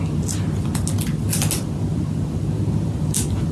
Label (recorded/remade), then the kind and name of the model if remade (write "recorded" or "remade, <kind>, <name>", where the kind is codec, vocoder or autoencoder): recorded